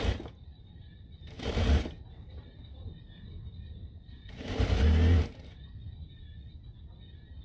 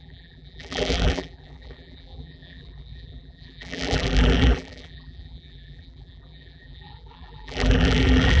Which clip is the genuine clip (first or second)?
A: first